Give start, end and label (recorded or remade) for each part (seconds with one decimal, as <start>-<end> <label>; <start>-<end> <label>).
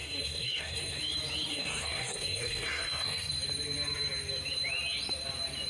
0.0-1.0 remade; 1.0-1.5 recorded; 1.5-3.3 remade; 3.3-5.7 recorded